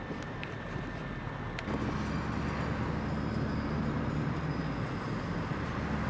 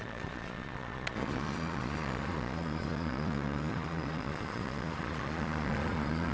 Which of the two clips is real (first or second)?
first